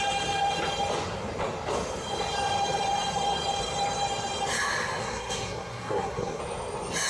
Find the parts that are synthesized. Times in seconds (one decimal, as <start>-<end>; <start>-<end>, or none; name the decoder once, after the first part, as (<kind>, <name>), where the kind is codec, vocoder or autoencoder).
5.0-6.4 (codec, SNAC)